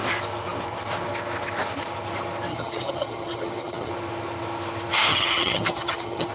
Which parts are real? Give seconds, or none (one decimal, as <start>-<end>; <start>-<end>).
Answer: 0.0-2.5; 3.9-5.1